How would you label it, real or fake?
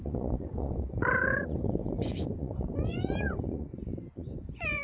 fake